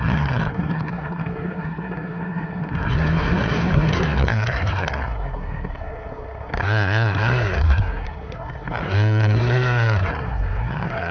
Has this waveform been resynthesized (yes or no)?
yes